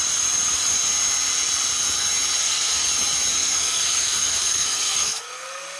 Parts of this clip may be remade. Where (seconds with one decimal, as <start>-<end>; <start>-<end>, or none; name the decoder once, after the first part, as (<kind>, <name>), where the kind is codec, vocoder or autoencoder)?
2.4-2.9 (codec, SNAC); 3.3-5.8